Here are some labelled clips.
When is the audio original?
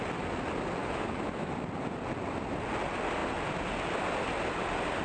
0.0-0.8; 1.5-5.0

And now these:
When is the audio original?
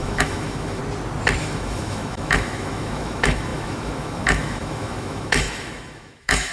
0.8-1.4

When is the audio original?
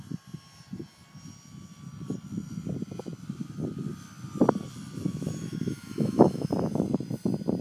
0.0-5.1; 6.5-7.6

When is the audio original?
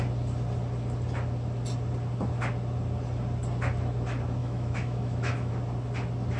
0.0-4.4; 5.5-6.4